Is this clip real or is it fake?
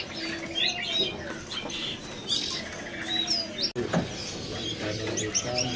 real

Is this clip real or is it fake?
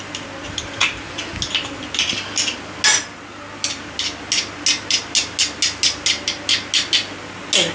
real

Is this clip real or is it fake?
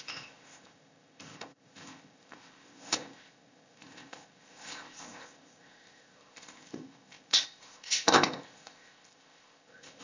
fake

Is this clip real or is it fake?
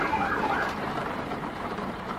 fake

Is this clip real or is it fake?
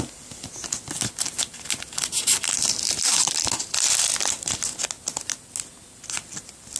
real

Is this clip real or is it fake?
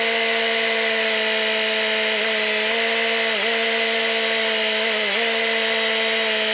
real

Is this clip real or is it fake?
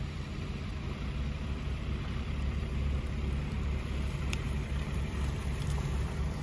fake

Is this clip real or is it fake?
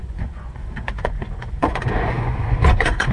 fake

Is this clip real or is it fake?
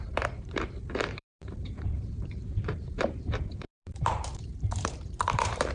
fake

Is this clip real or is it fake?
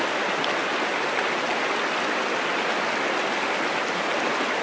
real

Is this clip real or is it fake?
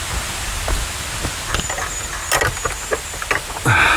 real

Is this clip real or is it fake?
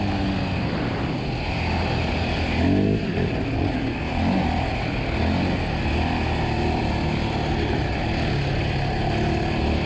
real